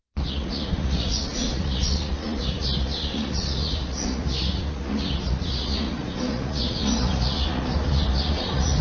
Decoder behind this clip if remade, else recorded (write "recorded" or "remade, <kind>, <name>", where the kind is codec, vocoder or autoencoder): remade, vocoder, Vocos